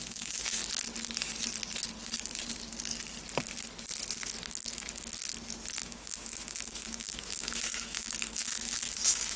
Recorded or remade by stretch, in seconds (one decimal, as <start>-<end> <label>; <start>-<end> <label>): 0.0-0.6 remade; 0.6-5.8 recorded; 5.8-9.4 remade